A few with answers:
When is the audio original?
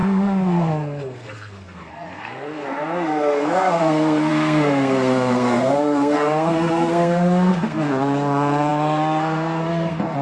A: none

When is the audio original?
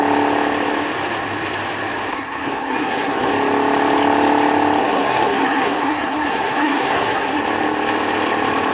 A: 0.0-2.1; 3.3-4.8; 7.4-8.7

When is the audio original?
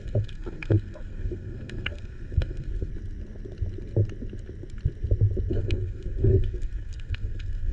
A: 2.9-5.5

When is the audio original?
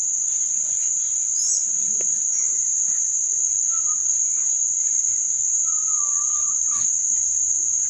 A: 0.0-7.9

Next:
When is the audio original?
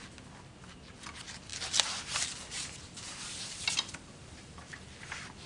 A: 0.0-1.5; 4.8-5.5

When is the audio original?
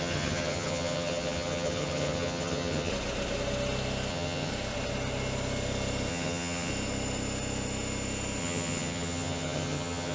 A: 2.9-4.1; 4.5-6.1; 6.7-8.4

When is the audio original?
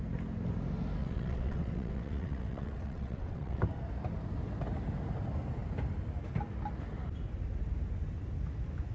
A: 0.0-1.0; 3.6-8.9